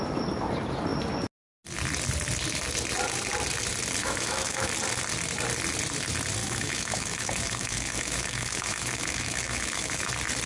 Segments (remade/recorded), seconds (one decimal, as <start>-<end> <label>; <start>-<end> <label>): 0.0-4.0 recorded; 4.0-4.7 remade; 4.7-6.4 recorded; 6.4-10.1 remade; 10.1-10.5 recorded